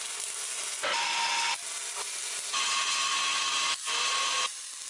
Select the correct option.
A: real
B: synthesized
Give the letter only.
A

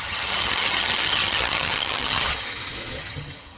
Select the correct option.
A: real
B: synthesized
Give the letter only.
B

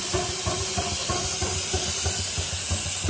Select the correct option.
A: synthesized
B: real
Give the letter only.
B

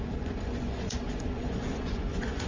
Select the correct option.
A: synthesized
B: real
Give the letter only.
A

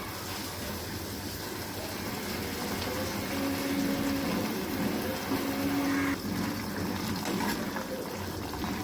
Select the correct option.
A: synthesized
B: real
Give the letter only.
B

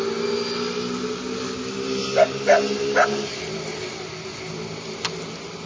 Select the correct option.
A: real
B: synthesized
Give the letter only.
A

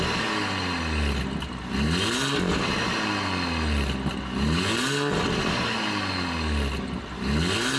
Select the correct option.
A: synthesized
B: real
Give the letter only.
B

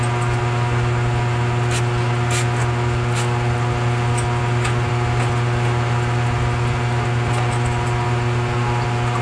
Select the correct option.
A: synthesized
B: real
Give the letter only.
B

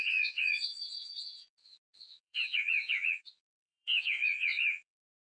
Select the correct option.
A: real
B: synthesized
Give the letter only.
B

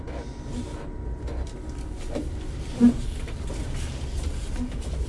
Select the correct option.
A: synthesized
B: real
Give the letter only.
B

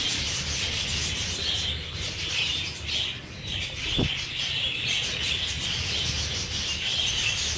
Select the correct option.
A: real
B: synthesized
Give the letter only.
A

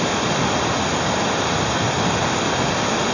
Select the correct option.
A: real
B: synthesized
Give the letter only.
A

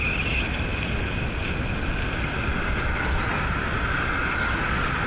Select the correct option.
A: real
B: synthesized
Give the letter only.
A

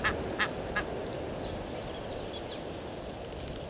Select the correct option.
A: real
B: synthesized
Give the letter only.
A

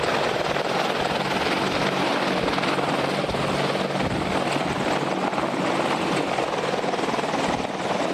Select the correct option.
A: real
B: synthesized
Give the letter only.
A